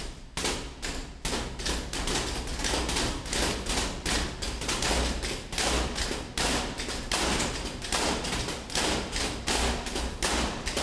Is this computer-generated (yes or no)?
no